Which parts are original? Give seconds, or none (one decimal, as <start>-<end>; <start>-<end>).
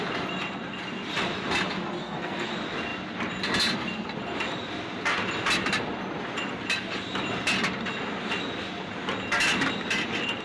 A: 0.0-2.0; 2.5-10.4